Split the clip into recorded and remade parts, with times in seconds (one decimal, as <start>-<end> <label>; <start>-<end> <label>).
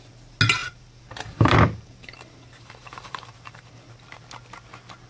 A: 0.0-0.6 recorded; 0.6-3.7 remade; 3.7-5.1 recorded